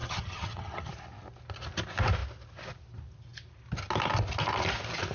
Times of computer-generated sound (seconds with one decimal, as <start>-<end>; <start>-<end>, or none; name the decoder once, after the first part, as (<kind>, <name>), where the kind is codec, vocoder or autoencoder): 0.0-0.9 (vocoder, HiFi-GAN)